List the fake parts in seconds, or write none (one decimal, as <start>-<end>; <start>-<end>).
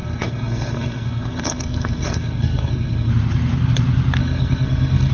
0.0-3.1; 4.2-5.1